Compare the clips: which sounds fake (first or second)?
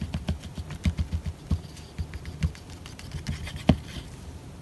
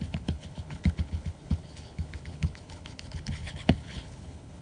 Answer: second